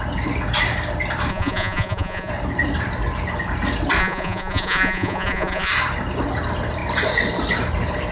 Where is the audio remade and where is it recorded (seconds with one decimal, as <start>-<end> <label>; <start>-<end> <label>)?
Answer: 0.0-1.3 recorded; 1.3-2.3 remade; 2.3-4.0 recorded; 4.0-5.7 remade; 5.7-8.1 recorded